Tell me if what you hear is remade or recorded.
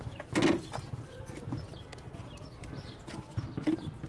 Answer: recorded